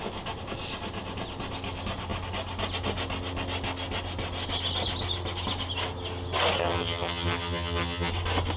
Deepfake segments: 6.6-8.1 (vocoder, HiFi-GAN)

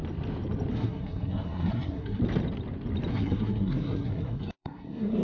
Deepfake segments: 0.7-2.2 (codec, SNAC); 3.1-5.2

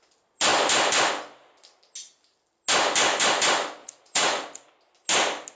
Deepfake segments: 3.8-4.7 (vocoder, Vocos)

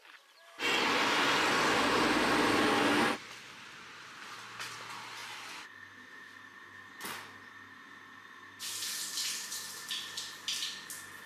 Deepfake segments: none

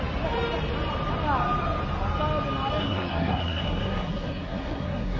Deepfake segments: 2.8-5.2 (codec, SNAC)